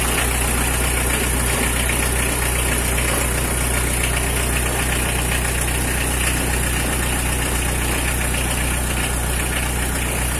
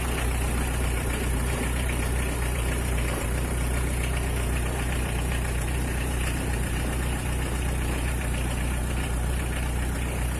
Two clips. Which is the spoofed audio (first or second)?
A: second